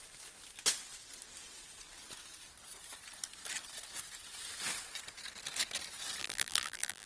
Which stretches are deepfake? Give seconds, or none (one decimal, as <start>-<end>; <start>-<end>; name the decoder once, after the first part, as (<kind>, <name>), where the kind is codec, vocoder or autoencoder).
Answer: 6.2-7.1 (vocoder, BigVGAN v2)